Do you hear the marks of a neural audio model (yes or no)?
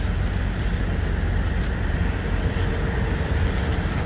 yes